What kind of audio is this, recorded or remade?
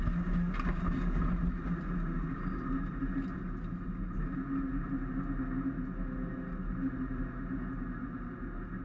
recorded